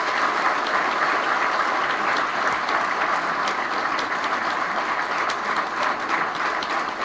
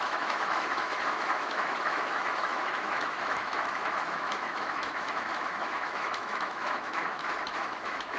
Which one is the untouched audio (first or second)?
first